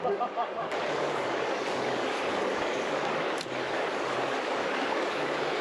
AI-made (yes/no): yes